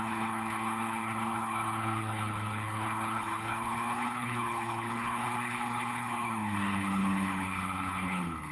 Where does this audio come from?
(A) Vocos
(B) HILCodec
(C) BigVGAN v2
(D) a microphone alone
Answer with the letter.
B